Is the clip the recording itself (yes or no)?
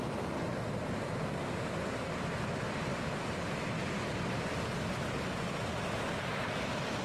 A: yes